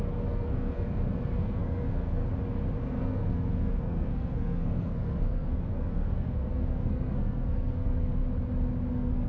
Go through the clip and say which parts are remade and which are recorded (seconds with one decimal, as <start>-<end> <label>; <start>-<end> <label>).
0.0-2.2 remade; 2.2-2.8 recorded; 2.8-8.2 remade; 8.2-8.9 recorded; 8.9-9.3 remade